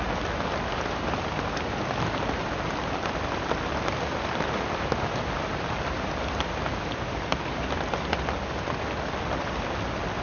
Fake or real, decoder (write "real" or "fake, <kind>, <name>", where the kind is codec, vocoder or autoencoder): real